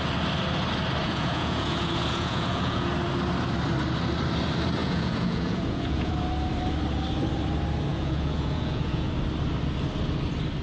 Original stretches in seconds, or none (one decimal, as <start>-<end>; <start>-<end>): 0.0-1.0; 2.9-4.8; 6.1-7.9; 9.1-10.6